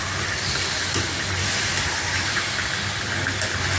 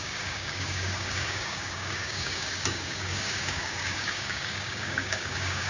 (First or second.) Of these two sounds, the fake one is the second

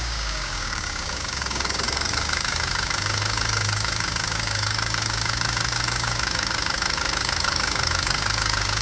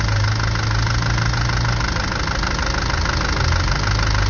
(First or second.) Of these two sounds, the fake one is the first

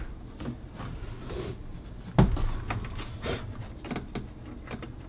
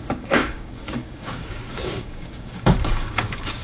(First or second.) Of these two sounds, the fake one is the second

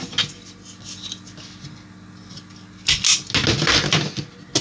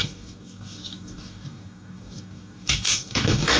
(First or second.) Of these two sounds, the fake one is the second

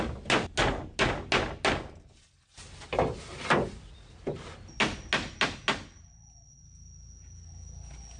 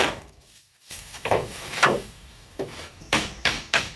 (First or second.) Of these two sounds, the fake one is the second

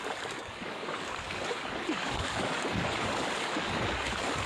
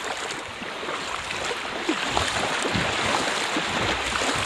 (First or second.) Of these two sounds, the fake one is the first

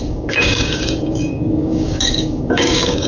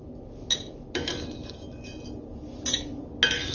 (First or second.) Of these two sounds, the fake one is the first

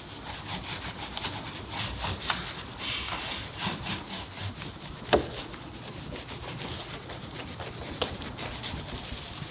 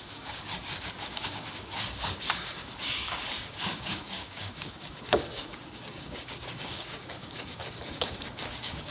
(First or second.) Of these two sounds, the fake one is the second